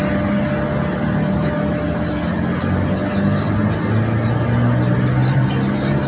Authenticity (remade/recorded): recorded